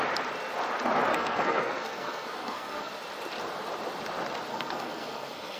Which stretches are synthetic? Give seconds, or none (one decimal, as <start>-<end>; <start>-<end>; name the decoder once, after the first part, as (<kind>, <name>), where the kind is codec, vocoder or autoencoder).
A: 1.1-2.9 (codec, SNAC); 4.5-5.6

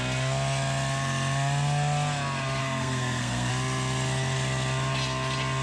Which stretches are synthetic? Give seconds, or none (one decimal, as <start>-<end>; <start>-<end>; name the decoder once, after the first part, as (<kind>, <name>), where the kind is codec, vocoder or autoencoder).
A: 2.6-3.5 (codec, SNAC)

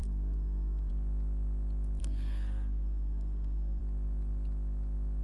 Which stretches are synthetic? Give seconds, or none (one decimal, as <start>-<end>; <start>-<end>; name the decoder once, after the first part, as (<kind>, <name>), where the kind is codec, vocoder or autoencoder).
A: 0.0-0.9 (codec, SNAC); 2.0-3.8

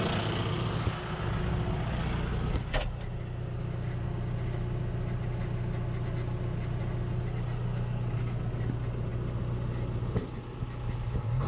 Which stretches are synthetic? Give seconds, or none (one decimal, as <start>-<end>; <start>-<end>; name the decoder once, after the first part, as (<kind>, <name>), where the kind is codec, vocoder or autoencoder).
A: none

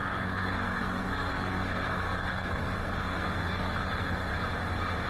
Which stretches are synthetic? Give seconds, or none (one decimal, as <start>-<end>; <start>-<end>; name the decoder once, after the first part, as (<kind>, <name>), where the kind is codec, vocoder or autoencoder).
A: 0.0-4.3 (codec, SNAC)

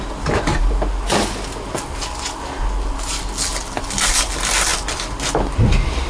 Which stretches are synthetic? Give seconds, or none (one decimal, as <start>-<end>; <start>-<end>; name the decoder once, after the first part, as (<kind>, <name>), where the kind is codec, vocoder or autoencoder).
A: none